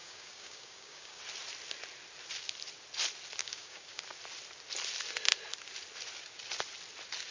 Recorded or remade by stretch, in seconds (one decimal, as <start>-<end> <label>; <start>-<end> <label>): 0.0-1.2 remade; 1.2-3.4 recorded; 3.4-4.0 remade; 4.0-7.3 recorded